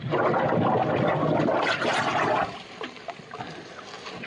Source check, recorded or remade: recorded